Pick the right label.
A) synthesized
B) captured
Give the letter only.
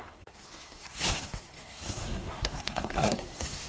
A